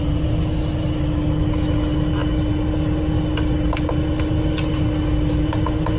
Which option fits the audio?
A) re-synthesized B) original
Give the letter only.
B